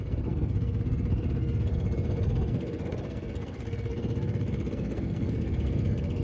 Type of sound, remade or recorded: remade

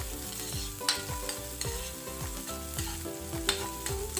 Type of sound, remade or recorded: recorded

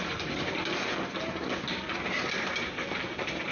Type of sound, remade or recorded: recorded